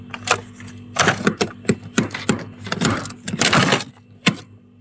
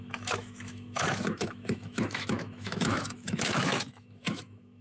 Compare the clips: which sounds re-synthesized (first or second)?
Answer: second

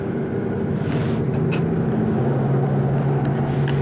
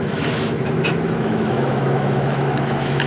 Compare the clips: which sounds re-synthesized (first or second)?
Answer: second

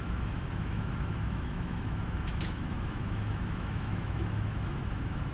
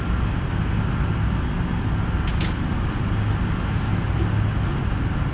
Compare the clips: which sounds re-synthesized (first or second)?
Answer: first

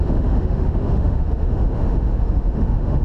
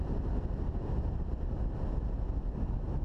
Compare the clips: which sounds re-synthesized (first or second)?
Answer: first